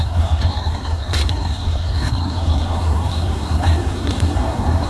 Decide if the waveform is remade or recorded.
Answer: remade